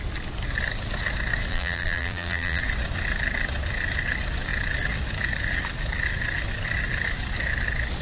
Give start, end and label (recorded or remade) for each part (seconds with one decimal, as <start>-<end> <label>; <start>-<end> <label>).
0.0-1.5 recorded; 1.5-2.6 remade; 2.6-8.0 recorded